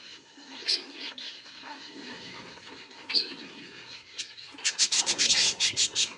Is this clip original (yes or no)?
no